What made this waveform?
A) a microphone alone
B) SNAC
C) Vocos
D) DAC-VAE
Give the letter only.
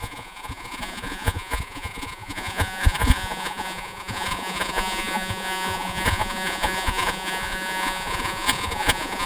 C